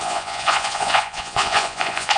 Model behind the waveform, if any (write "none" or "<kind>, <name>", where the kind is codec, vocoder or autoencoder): vocoder, Vocos